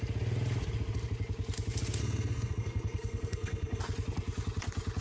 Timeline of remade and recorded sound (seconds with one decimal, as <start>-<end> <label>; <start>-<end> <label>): 0.0-2.0 recorded; 2.0-3.8 remade; 3.8-5.0 recorded